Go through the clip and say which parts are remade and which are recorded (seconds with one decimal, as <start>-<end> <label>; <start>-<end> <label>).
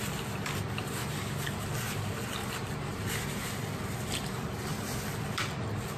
0.0-6.0 recorded